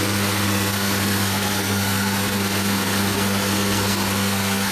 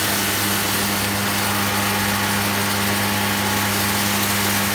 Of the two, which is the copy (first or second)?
first